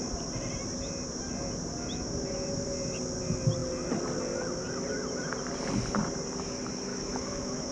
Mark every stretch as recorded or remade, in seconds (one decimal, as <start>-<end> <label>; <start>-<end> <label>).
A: 0.0-6.9 recorded; 6.9-7.7 remade